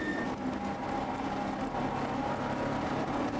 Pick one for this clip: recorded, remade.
recorded